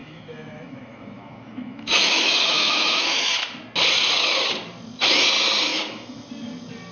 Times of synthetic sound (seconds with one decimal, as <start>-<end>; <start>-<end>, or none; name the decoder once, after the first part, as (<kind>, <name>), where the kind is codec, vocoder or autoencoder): 0.0-3.3 (autoencoder, DAC-VAE); 5.7-6.3